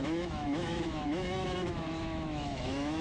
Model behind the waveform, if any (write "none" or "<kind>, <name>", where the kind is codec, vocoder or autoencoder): autoencoder, DAC-VAE